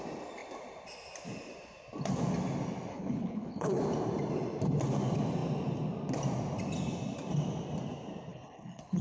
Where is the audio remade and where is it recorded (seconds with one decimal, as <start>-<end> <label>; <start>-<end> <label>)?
0.0-2.9 recorded; 2.9-3.8 remade; 3.8-8.3 recorded; 8.3-9.0 remade

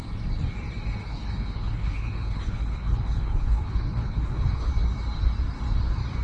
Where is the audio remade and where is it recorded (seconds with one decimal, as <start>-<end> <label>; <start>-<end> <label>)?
0.0-1.0 recorded; 1.0-4.7 remade; 4.7-6.2 recorded